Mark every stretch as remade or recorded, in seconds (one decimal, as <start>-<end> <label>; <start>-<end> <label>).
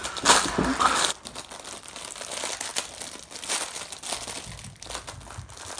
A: 0.0-5.8 recorded